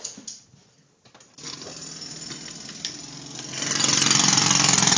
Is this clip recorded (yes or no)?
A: yes